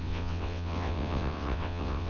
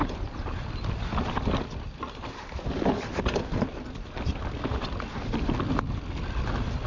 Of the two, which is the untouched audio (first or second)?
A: second